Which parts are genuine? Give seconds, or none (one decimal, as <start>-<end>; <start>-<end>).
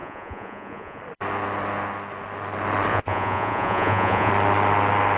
1.0-2.9; 4.3-5.2